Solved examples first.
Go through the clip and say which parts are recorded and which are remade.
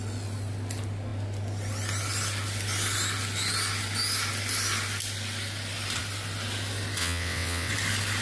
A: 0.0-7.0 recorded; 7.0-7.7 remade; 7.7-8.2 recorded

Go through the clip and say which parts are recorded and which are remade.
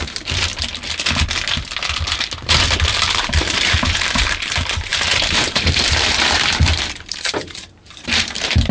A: 0.0-0.5 remade; 0.5-2.9 recorded; 2.9-8.7 remade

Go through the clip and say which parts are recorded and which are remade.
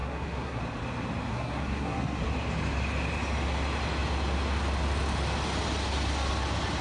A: 0.0-0.6 remade; 0.6-1.3 recorded; 1.3-2.2 remade; 2.2-6.8 recorded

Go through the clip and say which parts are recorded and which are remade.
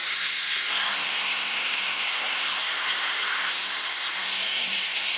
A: 0.0-5.2 remade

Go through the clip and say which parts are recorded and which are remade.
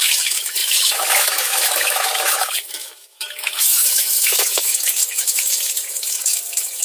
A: 0.0-6.8 remade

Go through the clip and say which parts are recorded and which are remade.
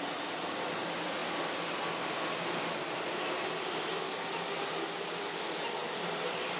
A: 0.0-6.6 recorded